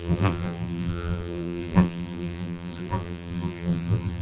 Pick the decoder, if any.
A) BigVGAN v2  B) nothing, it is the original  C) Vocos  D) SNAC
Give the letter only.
A